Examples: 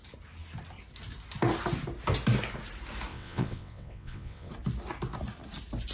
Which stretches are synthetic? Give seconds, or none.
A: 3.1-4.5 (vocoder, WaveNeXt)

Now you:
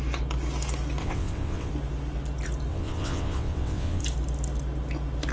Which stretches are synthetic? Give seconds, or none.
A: 1.0-1.7 (vocoder, WaveNeXt); 2.7-4.0